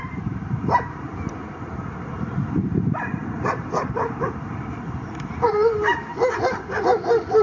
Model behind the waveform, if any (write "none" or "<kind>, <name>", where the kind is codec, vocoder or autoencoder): vocoder, BigVGAN v2